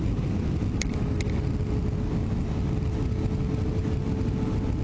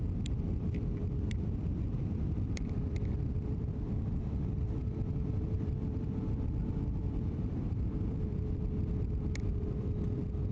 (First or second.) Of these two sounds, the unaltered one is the first